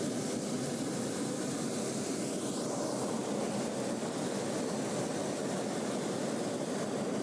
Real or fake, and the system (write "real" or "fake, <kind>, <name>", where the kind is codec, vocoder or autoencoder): real